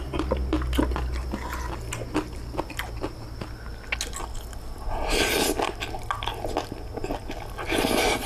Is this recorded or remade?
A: recorded